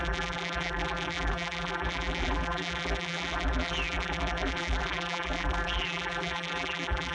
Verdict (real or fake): fake